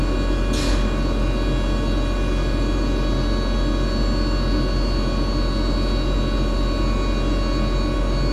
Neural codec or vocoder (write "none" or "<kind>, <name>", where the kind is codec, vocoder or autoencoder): none